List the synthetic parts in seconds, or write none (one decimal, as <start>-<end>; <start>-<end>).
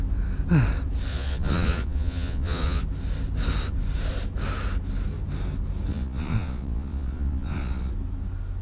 1.1-2.8; 5.9-7.9